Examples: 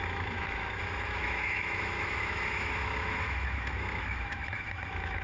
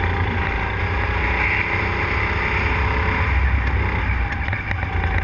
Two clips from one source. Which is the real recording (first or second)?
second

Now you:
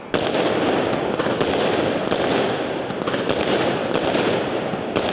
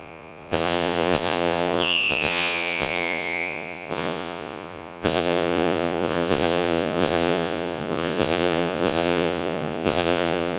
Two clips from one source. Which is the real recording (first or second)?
first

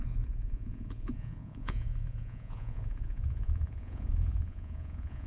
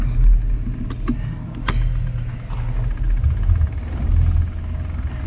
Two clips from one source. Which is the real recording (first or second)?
second